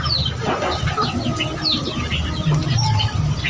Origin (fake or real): real